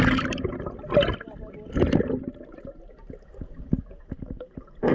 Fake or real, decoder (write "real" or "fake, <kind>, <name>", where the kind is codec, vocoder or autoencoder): real